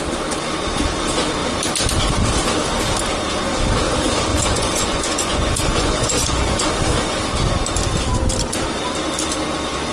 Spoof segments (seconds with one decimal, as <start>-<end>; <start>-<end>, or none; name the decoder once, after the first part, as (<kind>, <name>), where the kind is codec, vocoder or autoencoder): 4.3-6.7 (vocoder, Vocos)